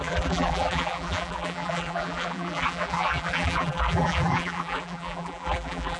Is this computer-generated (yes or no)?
yes